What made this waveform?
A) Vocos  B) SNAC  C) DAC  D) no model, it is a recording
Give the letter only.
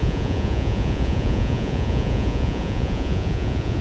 A